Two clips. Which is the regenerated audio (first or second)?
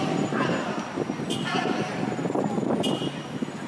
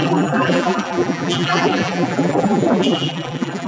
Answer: second